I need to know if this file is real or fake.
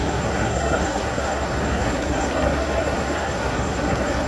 fake